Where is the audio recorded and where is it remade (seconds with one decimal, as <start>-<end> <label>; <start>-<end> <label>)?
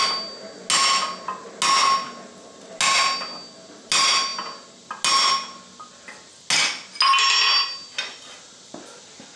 0.0-9.4 recorded